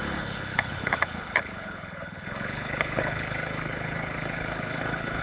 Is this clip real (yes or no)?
no